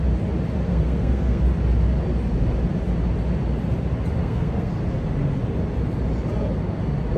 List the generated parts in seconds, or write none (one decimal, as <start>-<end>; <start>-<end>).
0.7-1.4; 4.2-4.7